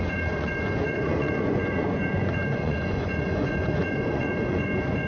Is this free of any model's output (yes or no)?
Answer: no